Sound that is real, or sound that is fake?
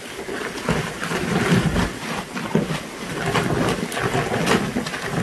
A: real